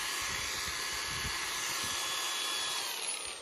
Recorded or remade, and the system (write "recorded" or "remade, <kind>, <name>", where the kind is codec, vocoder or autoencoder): recorded